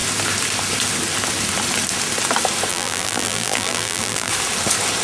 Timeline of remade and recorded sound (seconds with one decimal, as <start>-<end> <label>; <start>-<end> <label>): 0.0-2.7 recorded; 2.7-4.3 remade; 4.3-5.0 recorded